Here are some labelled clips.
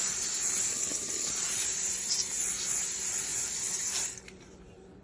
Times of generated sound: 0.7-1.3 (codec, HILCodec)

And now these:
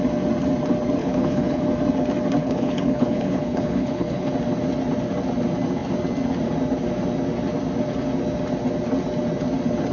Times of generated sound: 1.0-1.6 (codec, HILCodec); 2.4-4.3

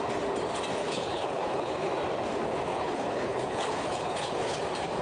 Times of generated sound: 0.8-1.9 (codec, HILCodec); 2.7-4.6

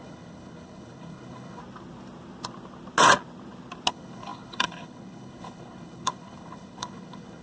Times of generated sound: 0.0-1.6 (codec, HILCodec); 3.9-7.4

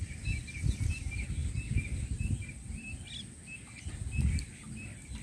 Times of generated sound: none

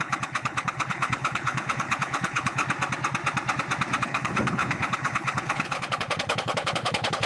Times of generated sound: 0.0-2.6 (codec, HILCodec); 4.0-7.3

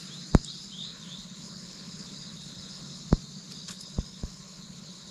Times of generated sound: 0.8-3.0 (codec, HILCodec); 3.6-5.1